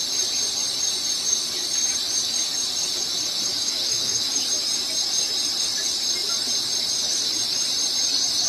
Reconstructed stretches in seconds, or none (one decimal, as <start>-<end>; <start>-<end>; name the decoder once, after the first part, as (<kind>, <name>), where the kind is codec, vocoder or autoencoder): 3.5-4.4 (autoencoder, DAC-VAE)